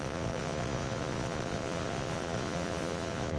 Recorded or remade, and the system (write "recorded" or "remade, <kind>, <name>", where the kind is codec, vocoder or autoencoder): remade, vocoder, Vocos